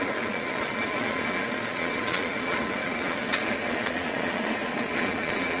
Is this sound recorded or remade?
remade